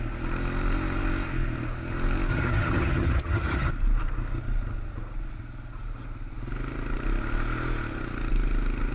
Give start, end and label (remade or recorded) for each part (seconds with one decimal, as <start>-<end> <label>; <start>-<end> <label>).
0.0-2.3 recorded; 2.3-3.7 remade; 3.7-8.9 recorded